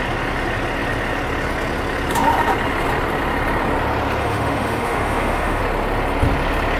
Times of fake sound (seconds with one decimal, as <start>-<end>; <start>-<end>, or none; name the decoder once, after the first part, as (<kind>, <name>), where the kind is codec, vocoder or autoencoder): 4.2-5.6 (autoencoder, DAC-VAE)